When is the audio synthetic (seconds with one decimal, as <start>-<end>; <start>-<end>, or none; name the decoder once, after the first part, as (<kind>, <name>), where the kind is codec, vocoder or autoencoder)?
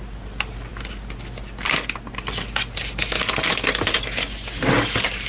none